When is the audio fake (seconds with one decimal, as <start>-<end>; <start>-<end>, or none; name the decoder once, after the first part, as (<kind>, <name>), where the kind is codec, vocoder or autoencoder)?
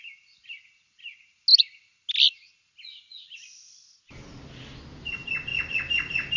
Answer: none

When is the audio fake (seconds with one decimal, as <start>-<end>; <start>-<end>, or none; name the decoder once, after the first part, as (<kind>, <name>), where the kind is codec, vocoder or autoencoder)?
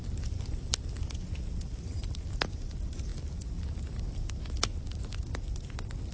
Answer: none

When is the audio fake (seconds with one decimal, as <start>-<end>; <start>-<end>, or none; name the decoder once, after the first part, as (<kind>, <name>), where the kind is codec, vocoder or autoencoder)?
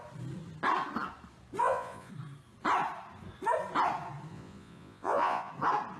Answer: 1.6-2.1 (vocoder, Vocos); 4.3-5.5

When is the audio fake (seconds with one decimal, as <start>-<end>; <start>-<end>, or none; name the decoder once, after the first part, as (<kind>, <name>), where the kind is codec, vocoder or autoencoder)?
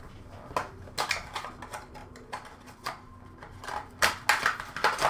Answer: none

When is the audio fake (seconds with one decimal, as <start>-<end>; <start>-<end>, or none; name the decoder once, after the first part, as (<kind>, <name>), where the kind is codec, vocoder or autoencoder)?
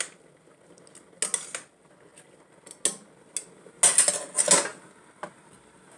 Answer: none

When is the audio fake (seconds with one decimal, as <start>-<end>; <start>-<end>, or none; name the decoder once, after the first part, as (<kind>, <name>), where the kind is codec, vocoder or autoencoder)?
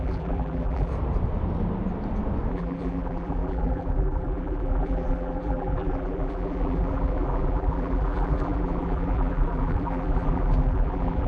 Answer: 0.0-0.9 (vocoder, BigVGAN v2); 2.5-11.3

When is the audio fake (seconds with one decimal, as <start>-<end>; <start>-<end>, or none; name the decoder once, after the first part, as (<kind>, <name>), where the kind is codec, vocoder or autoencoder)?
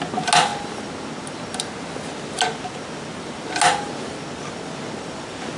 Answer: none